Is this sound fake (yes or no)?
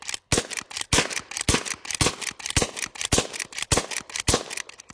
no